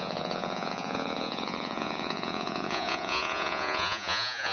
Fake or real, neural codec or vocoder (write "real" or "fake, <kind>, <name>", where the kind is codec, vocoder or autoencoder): fake, vocoder, Vocos